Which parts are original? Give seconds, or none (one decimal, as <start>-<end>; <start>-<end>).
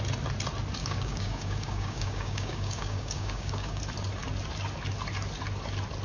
0.0-0.8; 3.8-6.0